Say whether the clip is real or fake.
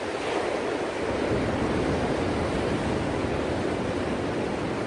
real